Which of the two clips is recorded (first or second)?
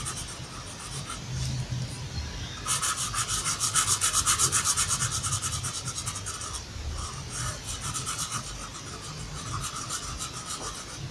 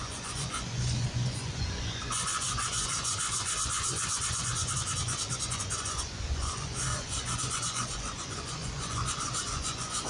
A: first